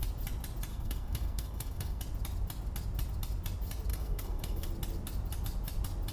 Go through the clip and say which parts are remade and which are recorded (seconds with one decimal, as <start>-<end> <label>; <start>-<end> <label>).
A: 0.0-0.7 recorded; 0.7-2.0 remade; 2.0-3.9 recorded; 3.9-4.7 remade; 4.7-6.1 recorded